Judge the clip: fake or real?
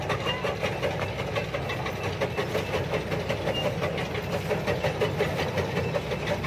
real